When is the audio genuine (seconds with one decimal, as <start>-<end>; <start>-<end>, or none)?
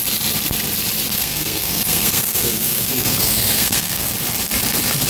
0.0-1.1; 4.1-5.1